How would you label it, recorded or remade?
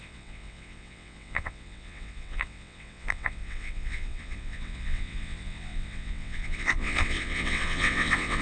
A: remade